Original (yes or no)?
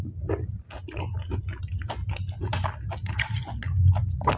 yes